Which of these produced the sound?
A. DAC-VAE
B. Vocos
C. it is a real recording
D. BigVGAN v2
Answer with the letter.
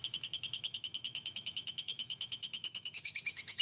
A